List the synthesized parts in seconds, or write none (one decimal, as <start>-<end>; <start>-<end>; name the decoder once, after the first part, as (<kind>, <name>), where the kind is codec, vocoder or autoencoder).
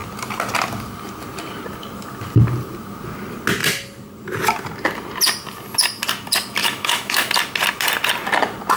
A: 6.6-7.3 (autoencoder, DAC-VAE)